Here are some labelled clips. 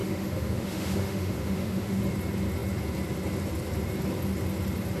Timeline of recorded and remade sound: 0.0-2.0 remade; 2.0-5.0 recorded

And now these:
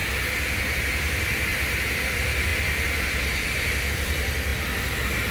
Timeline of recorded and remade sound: 0.0-1.5 recorded; 1.5-2.1 remade; 2.1-5.3 recorded

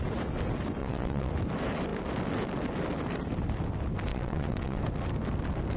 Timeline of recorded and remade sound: 0.0-0.8 recorded; 0.8-1.3 remade; 1.3-4.1 recorded; 4.1-4.8 remade; 4.8-5.8 recorded

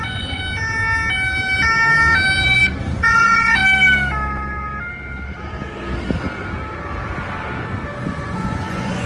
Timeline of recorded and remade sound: 0.0-0.4 remade; 0.4-2.8 recorded; 2.8-3.6 remade; 3.6-8.0 recorded; 8.0-9.1 remade